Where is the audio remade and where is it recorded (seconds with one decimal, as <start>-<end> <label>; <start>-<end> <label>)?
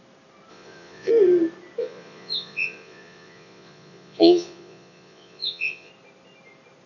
0.0-0.5 recorded; 0.5-1.1 remade; 1.1-1.8 recorded; 1.8-5.9 remade; 5.9-6.9 recorded